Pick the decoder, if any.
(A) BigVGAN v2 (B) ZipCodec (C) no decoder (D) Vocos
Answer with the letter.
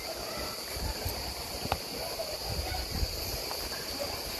C